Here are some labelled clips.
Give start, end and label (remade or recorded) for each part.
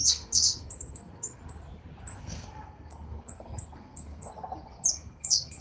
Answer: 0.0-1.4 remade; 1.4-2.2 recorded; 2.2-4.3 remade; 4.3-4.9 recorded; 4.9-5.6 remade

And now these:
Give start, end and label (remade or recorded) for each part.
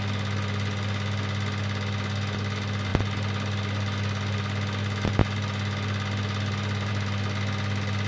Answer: 0.0-8.1 recorded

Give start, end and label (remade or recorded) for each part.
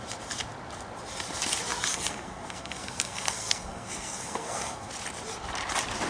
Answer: 0.0-1.9 recorded; 1.9-4.9 remade; 4.9-6.1 recorded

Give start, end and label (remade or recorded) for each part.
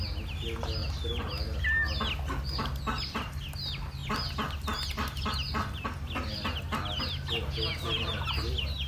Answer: 0.0-8.9 recorded